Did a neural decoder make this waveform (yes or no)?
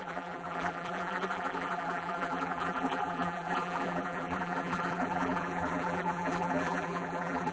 yes